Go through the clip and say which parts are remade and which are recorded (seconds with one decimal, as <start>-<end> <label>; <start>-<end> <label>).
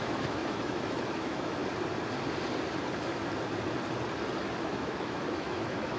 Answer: 0.0-1.6 remade; 1.6-4.7 recorded; 4.7-6.0 remade